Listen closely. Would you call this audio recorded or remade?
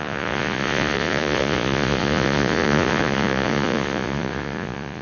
remade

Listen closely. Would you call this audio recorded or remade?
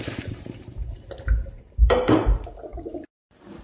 remade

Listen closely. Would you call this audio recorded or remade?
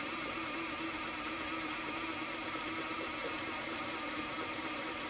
remade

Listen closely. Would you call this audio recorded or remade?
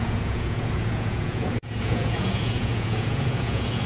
remade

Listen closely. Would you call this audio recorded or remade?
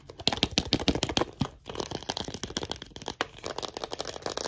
recorded